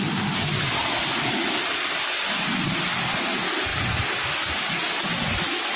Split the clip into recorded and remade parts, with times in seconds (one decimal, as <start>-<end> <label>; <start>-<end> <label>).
0.0-5.8 recorded